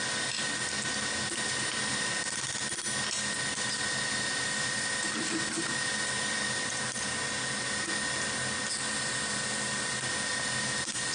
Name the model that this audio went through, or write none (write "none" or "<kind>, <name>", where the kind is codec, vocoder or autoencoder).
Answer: none